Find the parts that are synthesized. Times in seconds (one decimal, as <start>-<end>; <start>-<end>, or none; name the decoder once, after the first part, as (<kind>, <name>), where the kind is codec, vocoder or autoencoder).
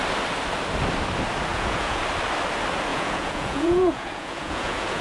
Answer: 1.5-2.0 (vocoder, Vocos); 2.9-5.0